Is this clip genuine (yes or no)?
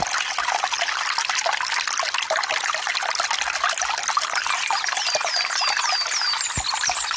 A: yes